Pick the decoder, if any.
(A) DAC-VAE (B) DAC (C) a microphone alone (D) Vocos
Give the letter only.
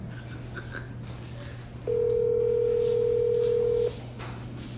C